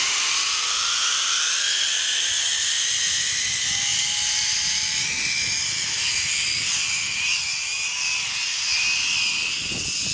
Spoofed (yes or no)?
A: no